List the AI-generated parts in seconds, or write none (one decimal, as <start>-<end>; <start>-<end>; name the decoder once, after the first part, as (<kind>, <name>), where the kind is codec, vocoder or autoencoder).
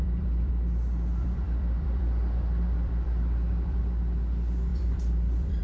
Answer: 0.0-0.5 (vocoder, BigVGAN v2); 1.1-3.8; 4.7-5.6